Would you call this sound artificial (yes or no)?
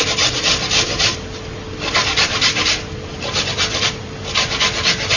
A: no